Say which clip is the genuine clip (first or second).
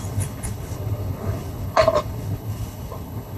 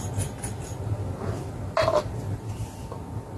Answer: second